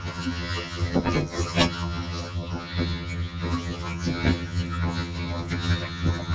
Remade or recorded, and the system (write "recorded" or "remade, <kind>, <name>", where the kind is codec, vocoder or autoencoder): remade, vocoder, HiFi-GAN